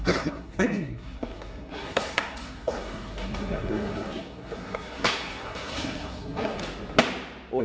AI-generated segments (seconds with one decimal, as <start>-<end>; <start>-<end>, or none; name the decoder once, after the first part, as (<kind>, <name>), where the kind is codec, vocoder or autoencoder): 0.0-6.6 (codec, SNAC)

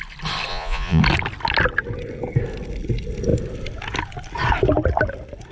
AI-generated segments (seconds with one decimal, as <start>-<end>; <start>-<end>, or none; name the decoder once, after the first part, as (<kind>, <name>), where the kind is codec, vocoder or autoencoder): 0.5-1.0 (vocoder, Vocos)

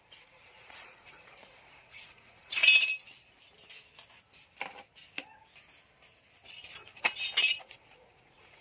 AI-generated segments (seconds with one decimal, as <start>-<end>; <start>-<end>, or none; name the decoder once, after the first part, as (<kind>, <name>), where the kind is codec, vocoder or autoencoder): 0.0-2.6 (vocoder, Vocos); 7.6-8.6

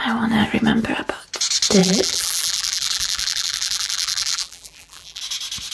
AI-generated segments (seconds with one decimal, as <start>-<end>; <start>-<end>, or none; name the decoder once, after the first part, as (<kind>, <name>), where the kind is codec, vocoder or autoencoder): 1.8-5.2 (vocoder, BigVGAN v2)

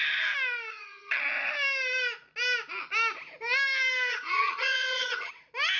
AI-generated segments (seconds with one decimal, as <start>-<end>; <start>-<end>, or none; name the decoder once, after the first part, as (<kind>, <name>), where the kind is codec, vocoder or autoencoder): 0.7-1.2 (vocoder, HiFi-GAN); 4.1-5.3

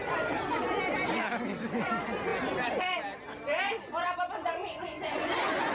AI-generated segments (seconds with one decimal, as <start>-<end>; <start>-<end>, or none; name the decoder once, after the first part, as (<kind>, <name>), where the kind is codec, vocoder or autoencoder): 4.4-5.7 (vocoder, Vocos)